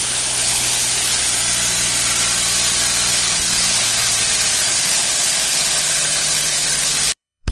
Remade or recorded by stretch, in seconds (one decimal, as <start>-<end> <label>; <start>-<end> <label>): 0.0-1.4 remade; 1.4-3.1 recorded; 3.1-3.9 remade; 3.9-4.6 recorded; 4.6-7.5 remade